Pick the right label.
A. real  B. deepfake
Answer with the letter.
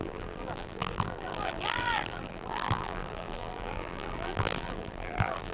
B